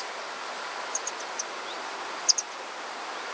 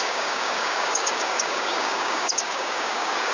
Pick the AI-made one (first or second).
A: second